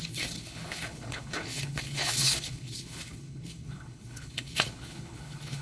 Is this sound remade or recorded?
remade